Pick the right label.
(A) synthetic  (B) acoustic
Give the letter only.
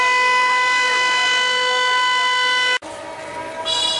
B